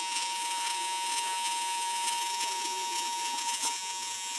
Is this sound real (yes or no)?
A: no